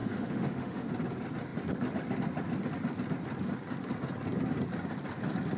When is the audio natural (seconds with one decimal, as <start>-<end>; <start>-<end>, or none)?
0.9-5.6